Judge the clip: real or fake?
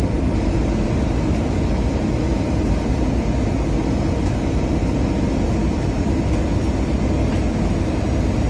real